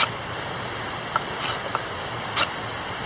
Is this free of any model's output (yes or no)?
yes